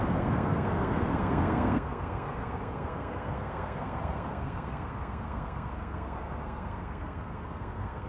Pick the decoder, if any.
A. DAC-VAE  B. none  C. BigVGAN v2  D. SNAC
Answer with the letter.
D